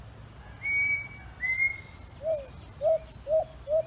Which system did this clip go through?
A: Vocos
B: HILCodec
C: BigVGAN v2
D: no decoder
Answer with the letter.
D